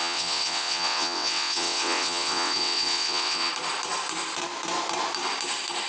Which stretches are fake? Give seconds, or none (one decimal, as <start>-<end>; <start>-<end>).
0.0-3.5